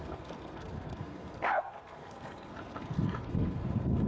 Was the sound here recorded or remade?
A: remade